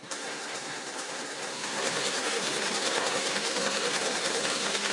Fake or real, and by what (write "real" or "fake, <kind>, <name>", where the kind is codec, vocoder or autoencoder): fake, codec, SNAC